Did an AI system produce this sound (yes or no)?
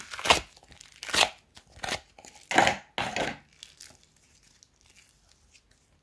no